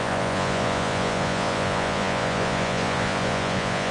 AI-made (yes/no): yes